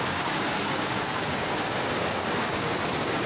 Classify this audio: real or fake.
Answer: fake